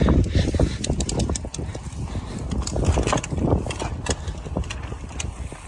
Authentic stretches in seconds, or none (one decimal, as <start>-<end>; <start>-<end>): 1.5-4.1